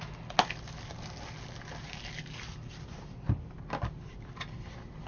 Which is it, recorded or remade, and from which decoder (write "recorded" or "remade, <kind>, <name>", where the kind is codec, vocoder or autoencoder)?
recorded